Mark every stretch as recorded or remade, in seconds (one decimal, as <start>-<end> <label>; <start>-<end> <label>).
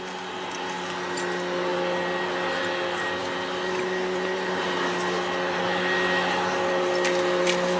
0.0-7.8 recorded